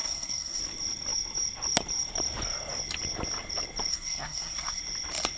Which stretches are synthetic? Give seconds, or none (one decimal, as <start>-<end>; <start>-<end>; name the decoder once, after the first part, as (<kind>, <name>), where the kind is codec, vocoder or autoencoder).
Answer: 0.0-0.6 (codec, SNAC); 3.9-4.8